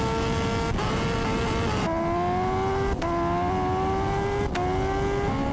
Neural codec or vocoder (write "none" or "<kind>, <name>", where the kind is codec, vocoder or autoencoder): none